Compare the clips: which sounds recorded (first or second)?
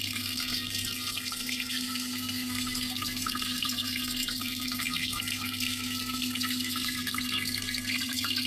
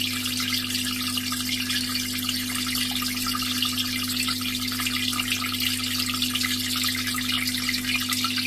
second